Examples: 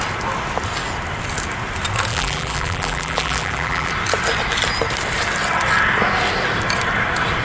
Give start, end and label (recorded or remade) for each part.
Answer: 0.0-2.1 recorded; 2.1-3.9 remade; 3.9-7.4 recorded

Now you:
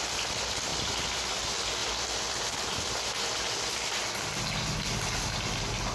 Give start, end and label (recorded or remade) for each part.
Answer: 0.0-5.9 recorded

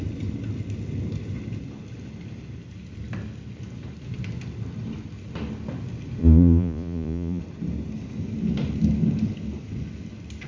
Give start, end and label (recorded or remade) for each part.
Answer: 0.0-6.2 recorded; 6.2-7.4 remade; 7.4-10.5 recorded

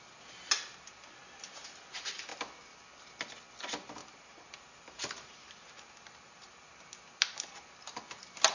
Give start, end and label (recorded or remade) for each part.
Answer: 0.0-4.0 recorded; 4.0-6.7 remade; 6.7-8.5 recorded

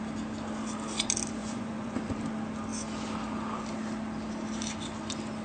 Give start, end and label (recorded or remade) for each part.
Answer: 0.0-1.4 recorded; 1.4-2.0 remade; 2.0-5.4 recorded

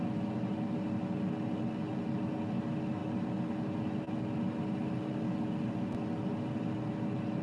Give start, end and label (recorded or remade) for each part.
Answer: 0.0-7.4 recorded

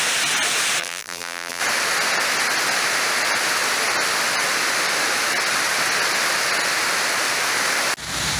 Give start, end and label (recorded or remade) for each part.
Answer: 0.0-0.8 recorded; 0.8-1.6 remade; 1.6-8.4 recorded